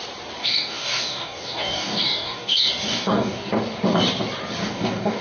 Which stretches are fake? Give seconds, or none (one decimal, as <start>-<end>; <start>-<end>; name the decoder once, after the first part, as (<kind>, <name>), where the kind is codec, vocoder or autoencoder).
0.4-3.5 (codec, DAC); 4.6-5.2